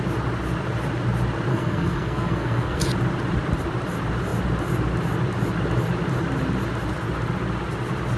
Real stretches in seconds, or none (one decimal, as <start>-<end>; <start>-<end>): 0.0-1.5; 2.8-8.2